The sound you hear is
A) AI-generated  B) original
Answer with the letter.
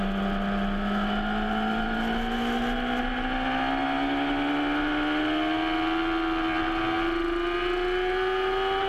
B